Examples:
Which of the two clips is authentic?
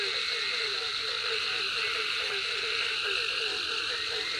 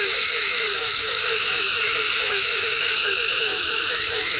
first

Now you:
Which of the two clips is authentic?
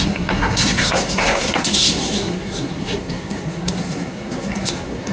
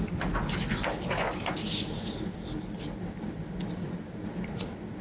second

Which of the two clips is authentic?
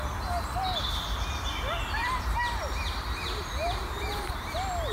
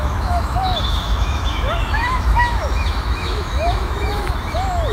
first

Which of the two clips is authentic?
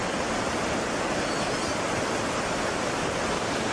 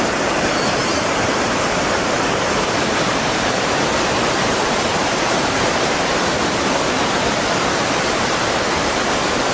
first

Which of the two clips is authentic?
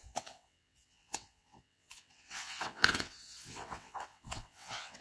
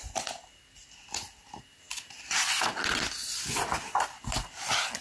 second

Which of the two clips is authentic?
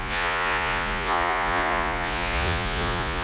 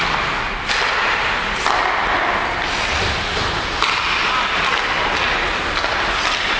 second